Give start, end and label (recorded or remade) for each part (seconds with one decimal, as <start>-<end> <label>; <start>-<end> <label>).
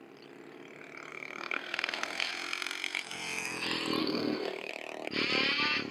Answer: 0.0-1.1 recorded; 1.1-2.3 remade; 2.3-4.0 recorded; 4.0-4.7 remade; 4.7-5.9 recorded